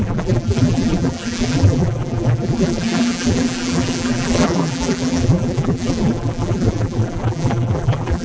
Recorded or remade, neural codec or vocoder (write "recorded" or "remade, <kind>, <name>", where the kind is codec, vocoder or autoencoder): remade, vocoder, BigVGAN v2